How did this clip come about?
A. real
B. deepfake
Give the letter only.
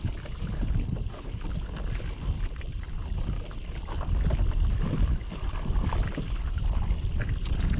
A